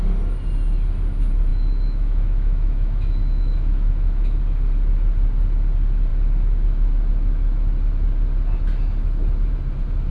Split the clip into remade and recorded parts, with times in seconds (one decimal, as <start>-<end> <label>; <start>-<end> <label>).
0.0-1.5 recorded; 1.5-4.4 remade; 4.4-10.1 recorded

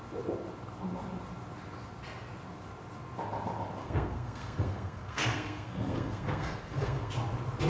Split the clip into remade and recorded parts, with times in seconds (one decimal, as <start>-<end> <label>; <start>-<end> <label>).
0.0-3.8 recorded; 3.8-7.1 remade; 7.1-7.7 recorded

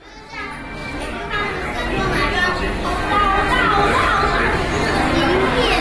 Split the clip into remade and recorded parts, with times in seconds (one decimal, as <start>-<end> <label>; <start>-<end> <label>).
0.0-0.8 recorded; 0.8-1.3 remade; 1.3-5.8 recorded

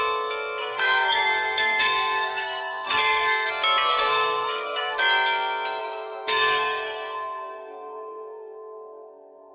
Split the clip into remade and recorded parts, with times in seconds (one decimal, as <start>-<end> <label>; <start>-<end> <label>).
0.0-0.6 recorded; 0.6-3.5 remade; 3.5-3.9 recorded; 3.9-5.0 remade; 5.0-5.8 recorded; 5.8-9.5 remade

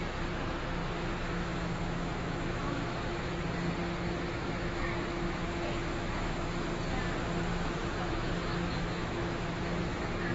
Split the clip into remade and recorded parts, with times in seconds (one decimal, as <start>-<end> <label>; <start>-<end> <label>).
0.0-0.8 recorded; 0.8-3.3 remade; 3.3-4.4 recorded; 4.4-6.3 remade; 6.3-7.5 recorded; 7.5-10.3 remade

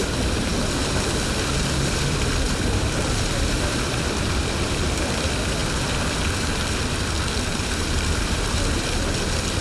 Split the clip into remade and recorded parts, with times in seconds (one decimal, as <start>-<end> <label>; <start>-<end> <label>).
0.0-0.5 remade; 0.5-1.6 recorded; 1.6-5.6 remade; 5.6-7.2 recorded; 7.2-9.6 remade

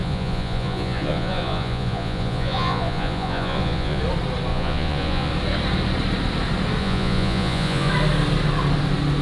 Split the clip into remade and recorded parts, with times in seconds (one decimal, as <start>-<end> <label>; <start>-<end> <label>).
0.0-4.0 remade; 4.0-4.5 recorded; 4.5-5.3 remade; 5.3-6.8 recorded; 6.8-7.9 remade; 7.9-9.2 recorded